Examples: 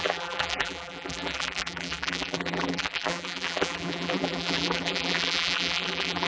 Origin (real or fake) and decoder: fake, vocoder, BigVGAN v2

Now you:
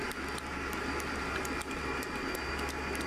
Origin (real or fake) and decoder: real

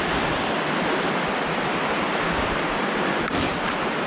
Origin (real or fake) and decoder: real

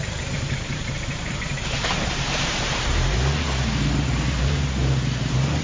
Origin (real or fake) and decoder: fake, vocoder, BigVGAN v2